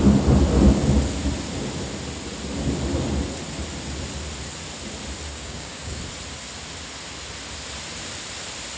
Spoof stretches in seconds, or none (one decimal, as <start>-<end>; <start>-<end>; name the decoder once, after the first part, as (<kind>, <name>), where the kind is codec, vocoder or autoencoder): 5.3-6.0 (codec, DAC)